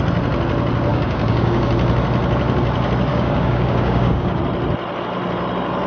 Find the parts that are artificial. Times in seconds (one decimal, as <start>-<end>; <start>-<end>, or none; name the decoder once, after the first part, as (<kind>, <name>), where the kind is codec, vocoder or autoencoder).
0.9-1.7 (codec, DAC); 3.1-4.4